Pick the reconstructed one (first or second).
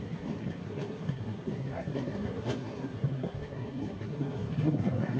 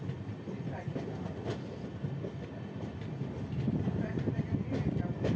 first